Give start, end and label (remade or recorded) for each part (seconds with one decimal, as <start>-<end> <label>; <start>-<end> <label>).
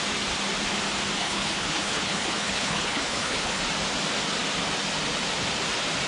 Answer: 0.0-1.2 recorded; 1.2-3.6 remade; 3.6-6.1 recorded